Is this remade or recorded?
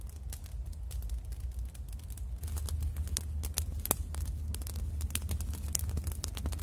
recorded